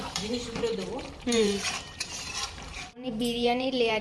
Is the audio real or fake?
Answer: fake